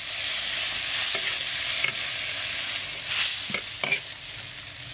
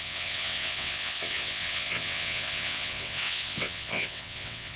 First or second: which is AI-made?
second